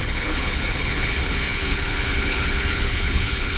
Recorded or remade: remade